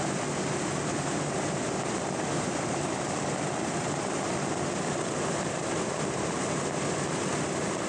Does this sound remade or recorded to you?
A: recorded